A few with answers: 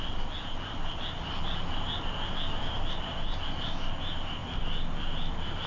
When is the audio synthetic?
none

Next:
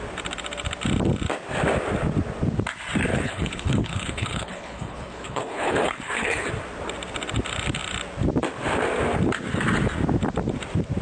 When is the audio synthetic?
3.1-6.5 (codec, HILCodec)

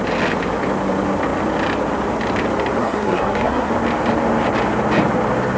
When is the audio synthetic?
2.8-3.7 (codec, SNAC)

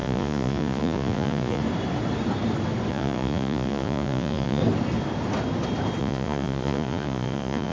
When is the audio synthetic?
0.0-1.6 (vocoder, Vocos); 2.9-4.6; 6.0-7.7

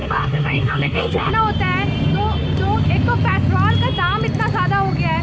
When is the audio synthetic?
0.0-1.3 (codec, SNAC)

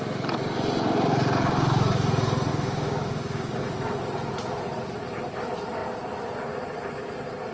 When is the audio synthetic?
2.5-3.6 (codec, DAC)